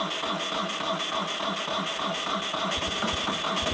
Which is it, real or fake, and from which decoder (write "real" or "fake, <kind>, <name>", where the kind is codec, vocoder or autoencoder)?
real